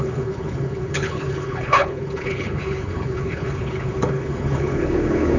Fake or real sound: fake